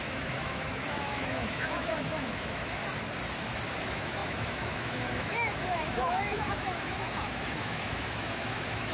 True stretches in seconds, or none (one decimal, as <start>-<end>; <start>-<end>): 2.8-3.8